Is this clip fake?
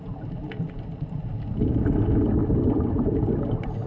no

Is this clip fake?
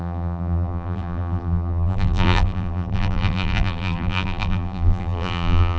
yes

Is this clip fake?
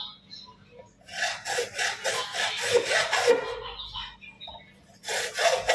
no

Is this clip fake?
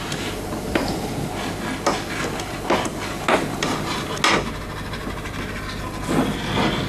no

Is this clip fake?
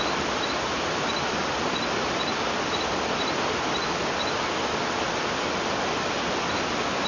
no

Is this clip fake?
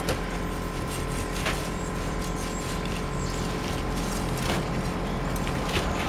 no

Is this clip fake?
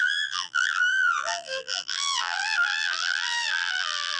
yes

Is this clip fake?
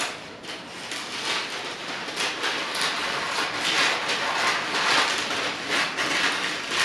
no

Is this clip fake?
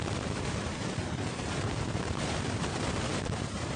yes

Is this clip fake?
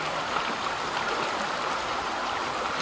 yes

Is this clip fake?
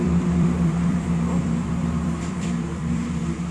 yes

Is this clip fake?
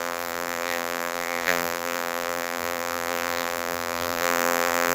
yes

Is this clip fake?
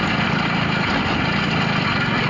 no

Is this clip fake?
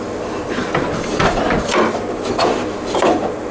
no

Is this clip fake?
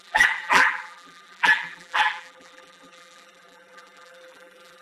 yes